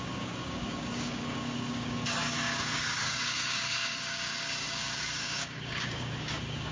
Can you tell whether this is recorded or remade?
remade